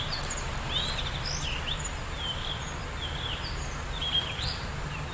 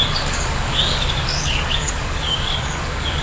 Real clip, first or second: first